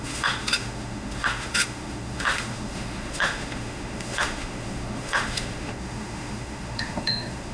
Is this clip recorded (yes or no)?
no